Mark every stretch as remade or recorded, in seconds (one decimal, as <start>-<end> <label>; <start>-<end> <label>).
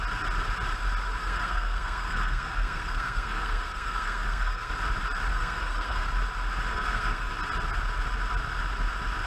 0.0-1.2 recorded; 1.2-4.7 remade; 4.7-5.3 recorded; 5.3-6.1 remade; 6.1-6.7 recorded; 6.7-7.3 remade; 7.3-9.3 recorded